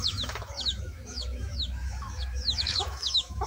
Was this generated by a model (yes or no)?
yes